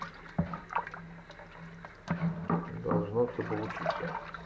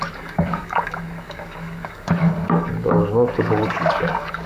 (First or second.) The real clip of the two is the first